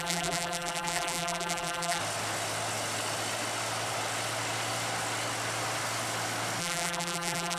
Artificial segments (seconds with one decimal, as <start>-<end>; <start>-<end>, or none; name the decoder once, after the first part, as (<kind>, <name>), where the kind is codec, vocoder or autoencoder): 0.0-2.0 (vocoder, BigVGAN v2); 6.6-7.6